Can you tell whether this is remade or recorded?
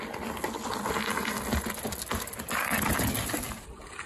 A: recorded